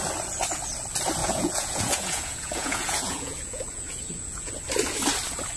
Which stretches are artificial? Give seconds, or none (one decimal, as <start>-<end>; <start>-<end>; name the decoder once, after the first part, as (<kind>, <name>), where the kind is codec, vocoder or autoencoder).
1.2-4.5 (vocoder, Vocos)

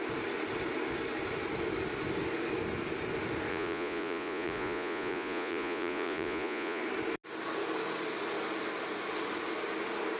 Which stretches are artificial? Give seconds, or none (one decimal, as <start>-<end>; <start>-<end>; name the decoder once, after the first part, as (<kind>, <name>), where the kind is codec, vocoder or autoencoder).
3.5-6.8 (vocoder, Vocos)

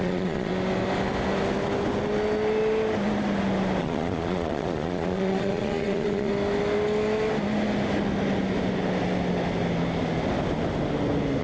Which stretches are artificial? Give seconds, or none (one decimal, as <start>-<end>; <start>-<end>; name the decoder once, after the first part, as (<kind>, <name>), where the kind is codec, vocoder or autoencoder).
0.0-0.5 (vocoder, Vocos); 3.8-6.3